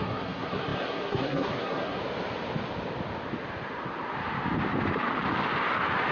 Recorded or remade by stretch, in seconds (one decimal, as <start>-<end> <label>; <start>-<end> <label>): 0.0-2.0 remade; 2.0-6.1 recorded